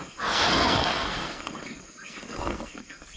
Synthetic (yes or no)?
yes